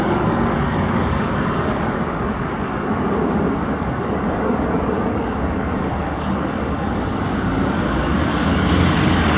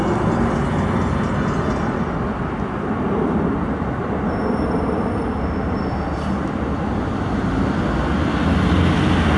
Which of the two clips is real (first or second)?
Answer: second